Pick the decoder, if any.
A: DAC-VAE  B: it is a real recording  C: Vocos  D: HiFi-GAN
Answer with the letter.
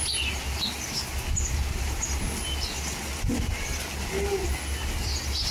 B